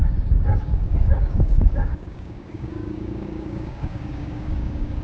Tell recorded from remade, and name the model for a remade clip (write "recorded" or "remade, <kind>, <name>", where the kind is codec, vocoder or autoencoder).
remade, codec, DAC